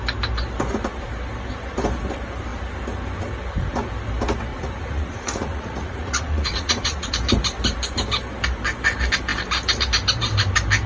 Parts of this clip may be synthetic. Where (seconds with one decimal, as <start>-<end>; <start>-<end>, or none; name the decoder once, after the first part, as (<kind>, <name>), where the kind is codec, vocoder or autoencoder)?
4.5-7.1 (vocoder, Vocos)